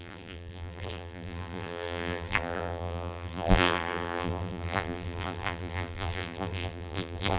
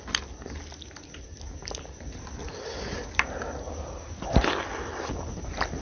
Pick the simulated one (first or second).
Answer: first